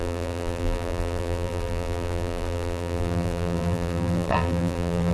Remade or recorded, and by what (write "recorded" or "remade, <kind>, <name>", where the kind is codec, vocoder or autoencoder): remade, vocoder, BigVGAN v2